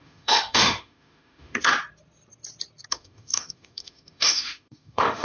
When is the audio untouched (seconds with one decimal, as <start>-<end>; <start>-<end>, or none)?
1.7-2.9